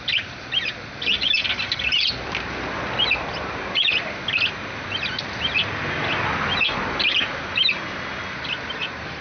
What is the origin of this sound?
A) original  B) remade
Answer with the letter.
A